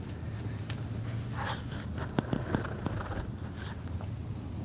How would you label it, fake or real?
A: real